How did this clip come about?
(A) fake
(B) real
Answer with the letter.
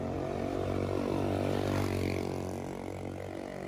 B